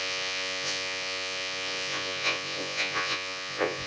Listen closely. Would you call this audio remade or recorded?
remade